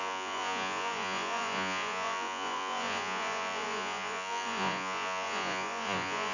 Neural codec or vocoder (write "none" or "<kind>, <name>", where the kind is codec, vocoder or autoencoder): vocoder, Vocos